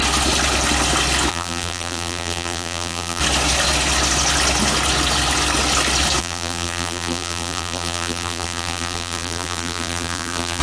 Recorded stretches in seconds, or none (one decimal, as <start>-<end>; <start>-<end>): 0.0-1.3; 3.2-6.2